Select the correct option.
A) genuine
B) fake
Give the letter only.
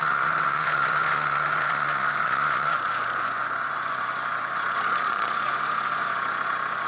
B